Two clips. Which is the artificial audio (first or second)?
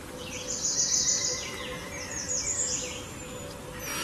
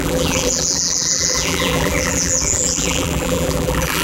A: second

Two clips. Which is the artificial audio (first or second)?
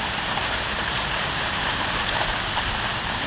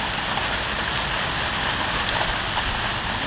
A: first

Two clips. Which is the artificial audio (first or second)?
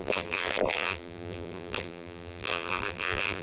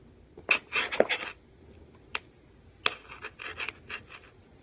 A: first